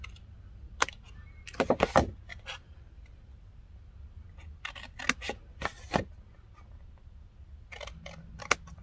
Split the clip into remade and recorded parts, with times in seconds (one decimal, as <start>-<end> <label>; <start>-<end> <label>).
0.0-2.3 recorded; 2.3-3.6 remade; 3.6-8.8 recorded